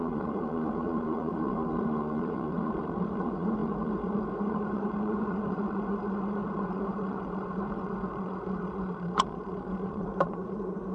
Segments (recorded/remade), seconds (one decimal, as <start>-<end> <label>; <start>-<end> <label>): 0.0-10.9 remade